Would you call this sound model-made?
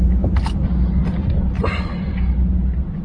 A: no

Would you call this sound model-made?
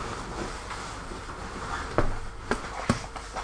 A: no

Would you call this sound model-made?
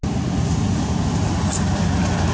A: no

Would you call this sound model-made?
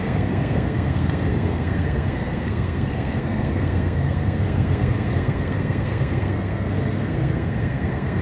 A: yes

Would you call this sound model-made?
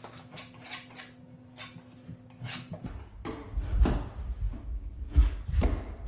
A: no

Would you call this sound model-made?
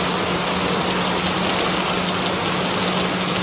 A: no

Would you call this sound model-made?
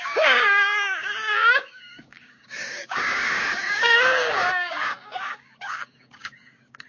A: yes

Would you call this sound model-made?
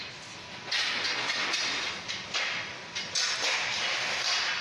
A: no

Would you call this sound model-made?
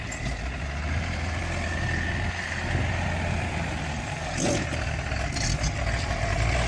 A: no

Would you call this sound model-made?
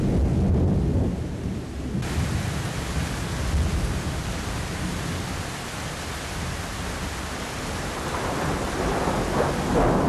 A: no